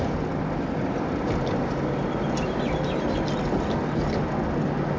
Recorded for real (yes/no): yes